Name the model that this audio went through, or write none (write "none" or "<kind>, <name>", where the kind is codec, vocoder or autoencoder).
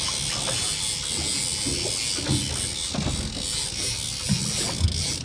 none